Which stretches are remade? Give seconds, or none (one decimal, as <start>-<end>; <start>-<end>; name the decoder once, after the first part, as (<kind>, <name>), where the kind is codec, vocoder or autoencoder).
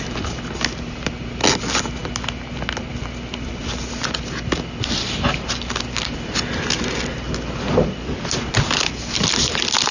none